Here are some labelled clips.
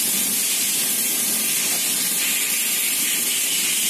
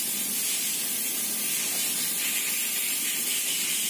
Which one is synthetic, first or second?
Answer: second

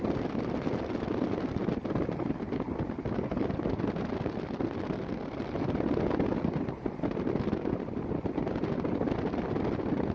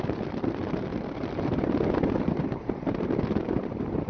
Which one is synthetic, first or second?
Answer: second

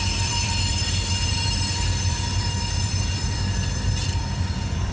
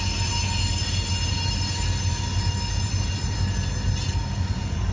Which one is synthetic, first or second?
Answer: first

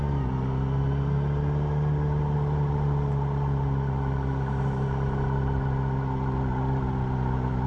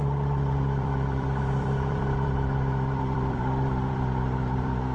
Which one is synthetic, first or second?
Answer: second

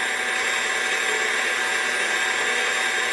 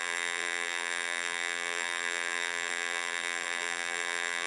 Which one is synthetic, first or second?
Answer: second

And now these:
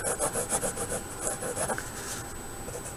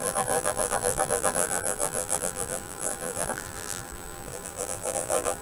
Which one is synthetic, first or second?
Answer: second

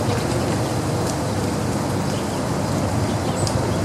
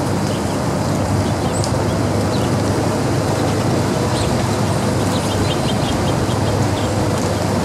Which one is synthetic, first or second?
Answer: first